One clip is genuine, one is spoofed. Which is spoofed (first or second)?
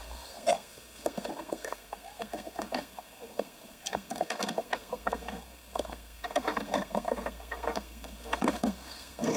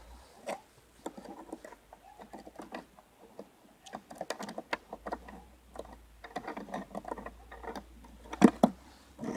first